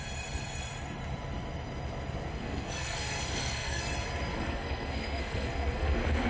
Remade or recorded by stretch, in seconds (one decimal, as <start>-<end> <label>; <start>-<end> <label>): 0.0-2.3 recorded; 2.3-3.9 remade; 3.9-4.3 recorded; 4.3-6.3 remade